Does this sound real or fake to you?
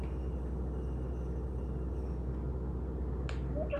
real